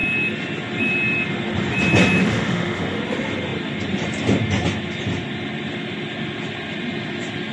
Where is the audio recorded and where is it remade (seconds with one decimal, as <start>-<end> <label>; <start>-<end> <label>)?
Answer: 0.0-2.2 recorded; 2.2-3.0 remade; 3.0-7.5 recorded